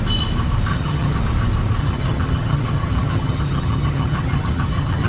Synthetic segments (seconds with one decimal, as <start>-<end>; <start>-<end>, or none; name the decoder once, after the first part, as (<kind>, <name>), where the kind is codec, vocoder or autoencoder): 0.7-1.2 (vocoder, HiFi-GAN); 1.8-5.1